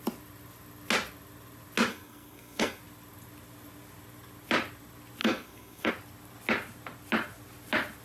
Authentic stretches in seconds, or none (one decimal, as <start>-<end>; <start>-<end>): 0.0-1.9; 2.8-5.2; 5.9-8.0